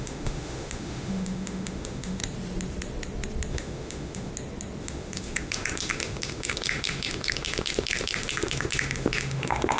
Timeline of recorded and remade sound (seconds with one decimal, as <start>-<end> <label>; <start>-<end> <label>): 0.0-2.2 remade; 2.2-3.5 recorded; 3.5-4.3 remade; 4.3-4.8 recorded; 4.8-9.8 remade